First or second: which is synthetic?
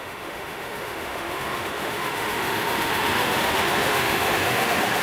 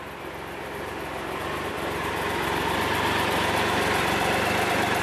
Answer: first